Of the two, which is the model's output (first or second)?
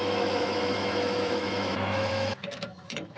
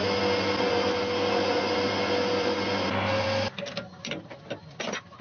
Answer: first